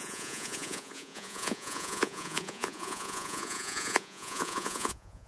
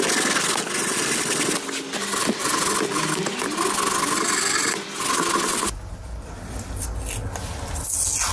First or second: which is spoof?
first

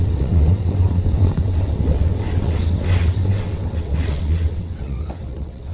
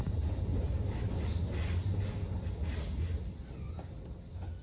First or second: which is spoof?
first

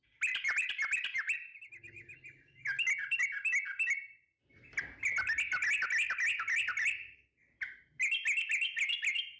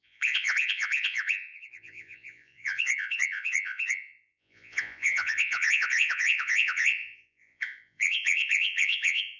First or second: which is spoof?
second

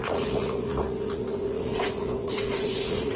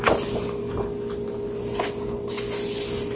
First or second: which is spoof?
first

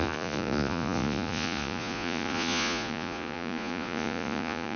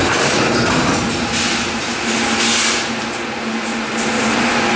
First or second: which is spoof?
first